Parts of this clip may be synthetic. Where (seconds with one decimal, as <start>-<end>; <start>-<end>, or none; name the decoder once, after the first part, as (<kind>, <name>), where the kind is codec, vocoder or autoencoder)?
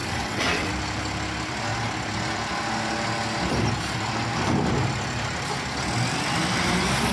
0.0-0.7 (vocoder, WaveNeXt)